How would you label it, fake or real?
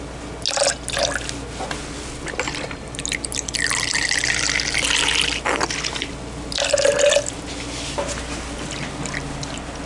real